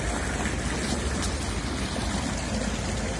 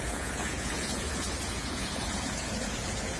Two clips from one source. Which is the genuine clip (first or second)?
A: first